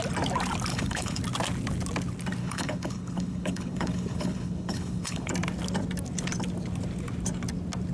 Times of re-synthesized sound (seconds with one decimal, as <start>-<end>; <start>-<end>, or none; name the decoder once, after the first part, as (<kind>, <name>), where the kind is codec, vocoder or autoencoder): 0.7-1.2 (codec, HILCodec); 2.4-5.3